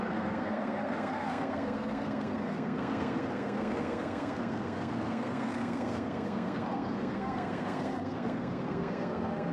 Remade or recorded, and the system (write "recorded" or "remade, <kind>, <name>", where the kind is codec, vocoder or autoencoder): remade, codec, SNAC